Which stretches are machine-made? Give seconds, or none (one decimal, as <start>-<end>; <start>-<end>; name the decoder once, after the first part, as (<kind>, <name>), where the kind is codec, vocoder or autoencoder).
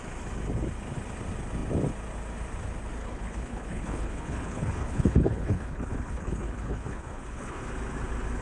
3.0-7.7 (codec, HILCodec)